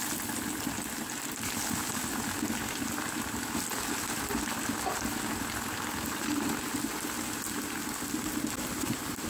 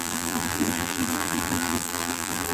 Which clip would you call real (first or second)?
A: first